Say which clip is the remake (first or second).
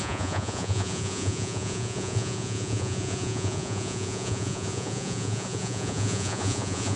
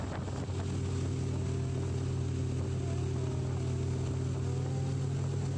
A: first